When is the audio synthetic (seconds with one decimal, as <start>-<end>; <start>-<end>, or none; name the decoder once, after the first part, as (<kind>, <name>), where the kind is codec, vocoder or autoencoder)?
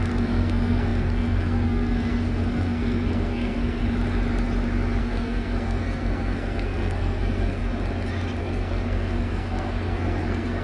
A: 0.0-3.8 (codec, SNAC); 5.0-7.6; 8.4-10.6